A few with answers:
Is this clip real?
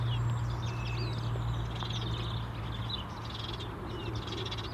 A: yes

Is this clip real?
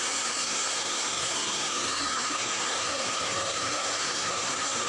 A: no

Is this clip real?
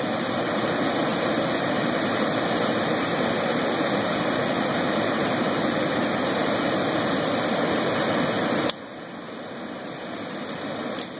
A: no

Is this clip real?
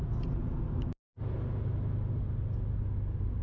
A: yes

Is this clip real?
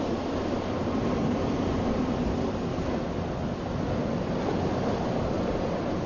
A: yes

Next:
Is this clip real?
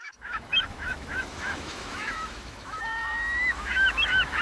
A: no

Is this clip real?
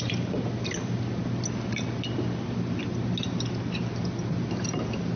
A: yes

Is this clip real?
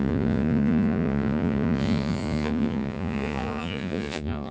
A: no